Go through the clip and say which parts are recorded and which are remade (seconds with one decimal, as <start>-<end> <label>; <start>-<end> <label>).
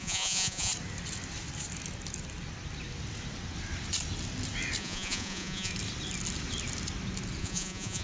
0.0-0.7 remade; 0.7-4.8 recorded; 4.8-5.7 remade; 5.7-7.4 recorded; 7.4-8.0 remade